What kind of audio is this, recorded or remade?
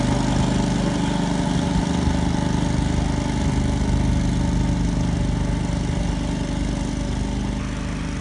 recorded